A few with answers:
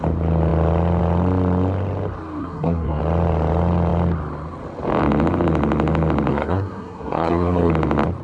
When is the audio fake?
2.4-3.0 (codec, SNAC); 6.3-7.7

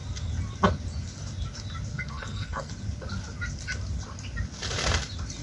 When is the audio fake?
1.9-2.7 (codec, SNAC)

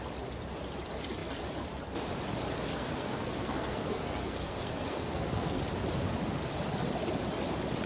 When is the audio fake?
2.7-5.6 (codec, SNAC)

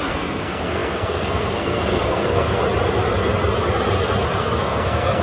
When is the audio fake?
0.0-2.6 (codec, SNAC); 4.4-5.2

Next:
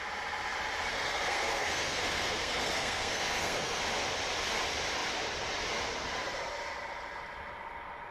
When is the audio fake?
0.9-3.8 (codec, SNAC)

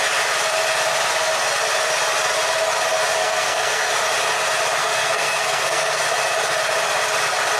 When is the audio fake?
3.2-3.9 (codec, SNAC); 4.8-6.0

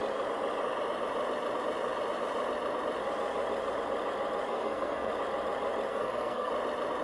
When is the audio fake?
4.5-5.1 (codec, SNAC); 5.9-6.5

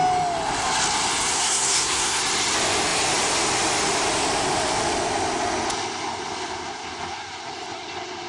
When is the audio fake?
1.3-2.2 (codec, SNAC)